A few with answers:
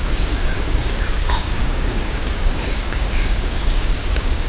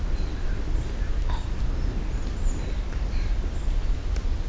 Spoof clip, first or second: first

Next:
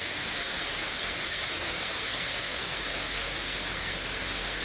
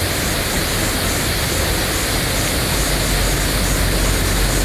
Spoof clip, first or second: first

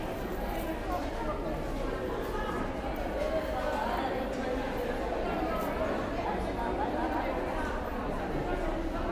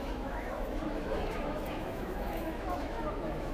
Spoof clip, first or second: second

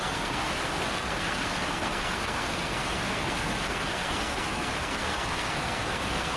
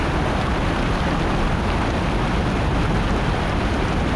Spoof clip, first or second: first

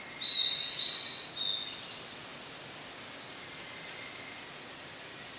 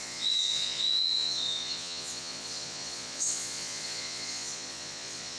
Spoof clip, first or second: second